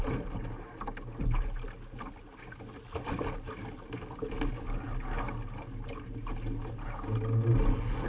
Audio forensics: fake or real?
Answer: real